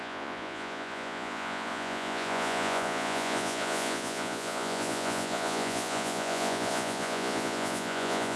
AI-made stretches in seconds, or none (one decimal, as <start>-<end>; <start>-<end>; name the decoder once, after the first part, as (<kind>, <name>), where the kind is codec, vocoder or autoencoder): 0.0-8.4 (vocoder, Vocos)